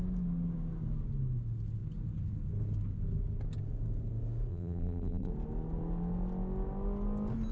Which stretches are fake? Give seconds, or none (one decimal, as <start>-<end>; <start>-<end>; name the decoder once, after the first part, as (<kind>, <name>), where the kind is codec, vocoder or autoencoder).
4.5-5.3 (vocoder, BigVGAN v2)